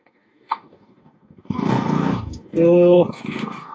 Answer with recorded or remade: remade